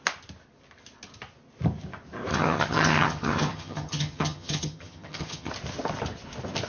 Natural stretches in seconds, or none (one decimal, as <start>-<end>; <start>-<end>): 0.0-2.3; 5.5-6.7